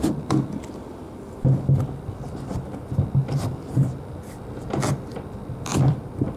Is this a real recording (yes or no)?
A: no